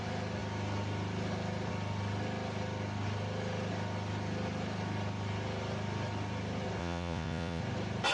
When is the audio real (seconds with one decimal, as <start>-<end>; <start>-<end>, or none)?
0.0-6.8; 7.6-8.1